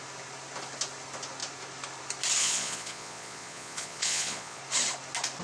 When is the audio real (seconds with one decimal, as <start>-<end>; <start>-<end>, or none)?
0.0-2.4; 4.6-5.4